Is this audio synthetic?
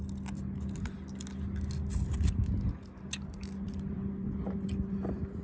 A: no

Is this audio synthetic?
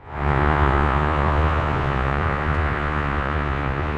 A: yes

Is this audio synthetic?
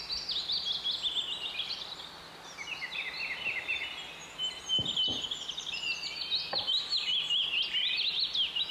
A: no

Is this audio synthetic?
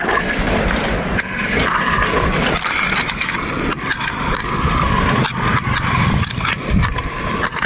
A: yes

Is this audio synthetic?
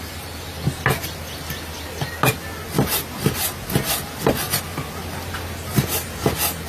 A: no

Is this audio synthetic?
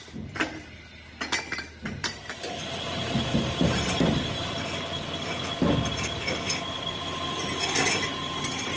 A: no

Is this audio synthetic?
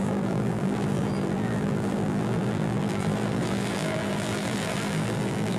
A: yes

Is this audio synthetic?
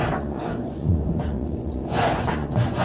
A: yes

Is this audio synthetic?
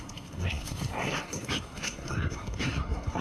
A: yes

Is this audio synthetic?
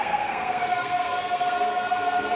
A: yes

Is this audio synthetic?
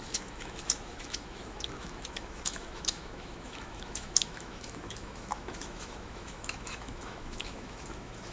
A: yes